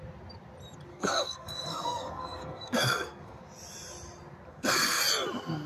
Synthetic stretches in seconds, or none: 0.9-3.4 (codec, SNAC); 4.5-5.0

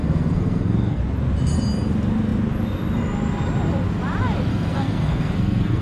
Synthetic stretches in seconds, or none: 0.0-1.0 (codec, SNAC); 4.5-5.8

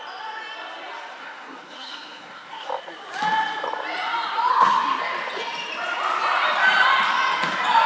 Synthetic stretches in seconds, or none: 1.2-2.7 (codec, SNAC); 4.5-5.0

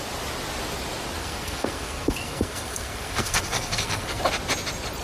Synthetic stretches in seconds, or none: 1.2-4.2 (codec, SNAC)